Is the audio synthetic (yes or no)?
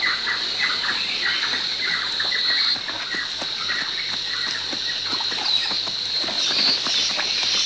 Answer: no